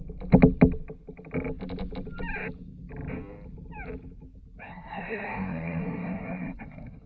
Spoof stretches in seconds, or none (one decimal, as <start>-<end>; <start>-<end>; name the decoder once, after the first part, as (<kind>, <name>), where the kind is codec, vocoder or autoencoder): 4.6-7.1 (codec, SNAC)